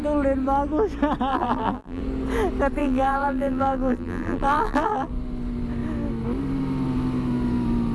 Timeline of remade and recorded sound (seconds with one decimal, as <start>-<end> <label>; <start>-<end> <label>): 0.0-1.3 recorded; 1.3-2.0 remade; 2.0-2.8 recorded; 2.8-5.1 remade; 5.1-7.9 recorded